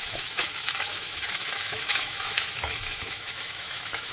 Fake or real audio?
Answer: fake